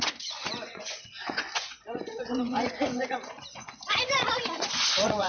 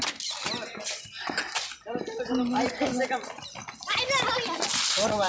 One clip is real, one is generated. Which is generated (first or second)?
first